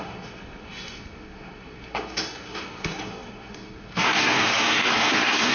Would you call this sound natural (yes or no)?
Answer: no